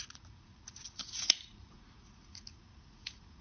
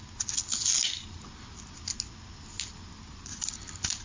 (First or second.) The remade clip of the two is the first